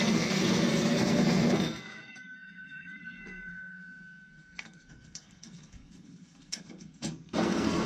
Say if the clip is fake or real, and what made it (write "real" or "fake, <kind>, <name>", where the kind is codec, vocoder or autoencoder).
fake, codec, SNAC